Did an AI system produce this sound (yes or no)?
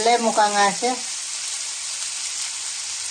no